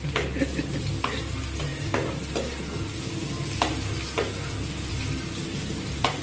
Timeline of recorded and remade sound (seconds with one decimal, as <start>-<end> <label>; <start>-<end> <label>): 0.0-6.2 recorded

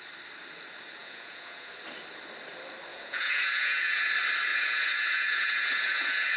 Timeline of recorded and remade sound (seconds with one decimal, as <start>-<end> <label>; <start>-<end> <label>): 0.0-1.0 recorded; 1.0-1.7 remade; 1.7-2.9 recorded; 2.9-4.1 remade; 4.1-4.5 recorded; 4.5-6.4 remade

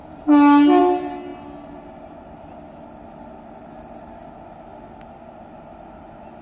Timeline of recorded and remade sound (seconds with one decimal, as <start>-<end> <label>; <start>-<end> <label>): 0.0-6.4 recorded

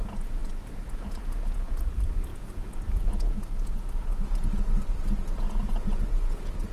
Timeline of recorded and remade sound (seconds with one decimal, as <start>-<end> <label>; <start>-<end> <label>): 0.0-6.7 remade

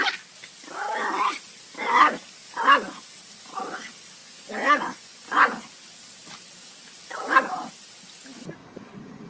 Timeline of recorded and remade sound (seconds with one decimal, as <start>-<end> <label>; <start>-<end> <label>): 0.0-4.2 recorded; 4.2-5.7 remade; 5.7-8.6 recorded; 8.6-9.3 remade